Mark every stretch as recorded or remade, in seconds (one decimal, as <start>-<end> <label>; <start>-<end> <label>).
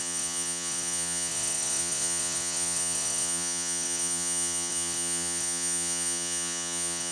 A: 0.0-7.1 remade